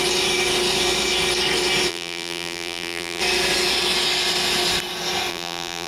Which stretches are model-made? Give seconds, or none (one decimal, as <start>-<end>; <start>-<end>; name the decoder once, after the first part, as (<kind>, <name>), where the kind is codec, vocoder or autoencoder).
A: 1.9-3.2 (vocoder, BigVGAN v2); 5.3-5.9